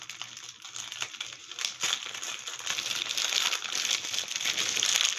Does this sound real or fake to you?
real